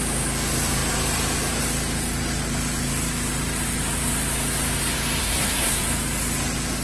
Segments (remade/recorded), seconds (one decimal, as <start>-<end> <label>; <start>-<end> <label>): 0.0-5.2 recorded; 5.2-5.8 remade; 5.8-6.8 recorded